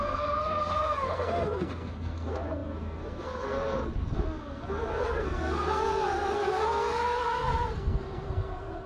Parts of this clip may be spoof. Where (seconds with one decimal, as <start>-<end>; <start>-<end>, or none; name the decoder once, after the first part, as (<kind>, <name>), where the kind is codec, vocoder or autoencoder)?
0.0-8.9 (codec, SNAC)